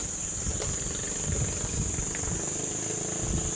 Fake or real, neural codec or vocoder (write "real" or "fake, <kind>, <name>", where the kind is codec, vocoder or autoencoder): real